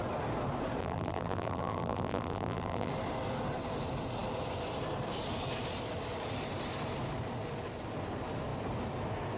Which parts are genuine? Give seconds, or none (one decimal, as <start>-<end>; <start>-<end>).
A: 0.0-0.8; 2.9-9.4